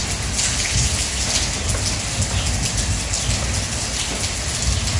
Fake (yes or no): no